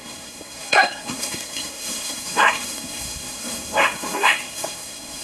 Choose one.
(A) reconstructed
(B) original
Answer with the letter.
A